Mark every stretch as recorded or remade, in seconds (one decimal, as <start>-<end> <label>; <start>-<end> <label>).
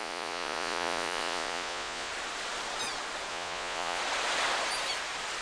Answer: 0.0-2.1 remade; 2.1-3.3 recorded; 3.3-4.0 remade; 4.0-5.4 recorded